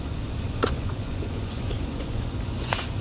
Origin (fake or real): fake